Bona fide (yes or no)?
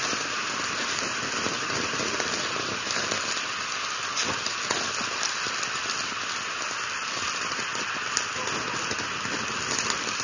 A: yes